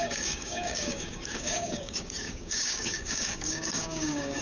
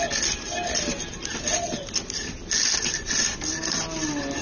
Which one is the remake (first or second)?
first